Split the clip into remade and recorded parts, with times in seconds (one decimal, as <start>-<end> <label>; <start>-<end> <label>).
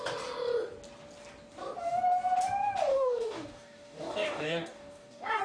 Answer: 0.0-2.9 recorded; 2.9-5.4 remade